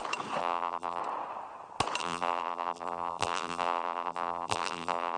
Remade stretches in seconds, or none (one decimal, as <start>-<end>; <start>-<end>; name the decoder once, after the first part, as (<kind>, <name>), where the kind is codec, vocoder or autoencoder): 0.4-1.0 (vocoder, BigVGAN v2); 2.0-5.2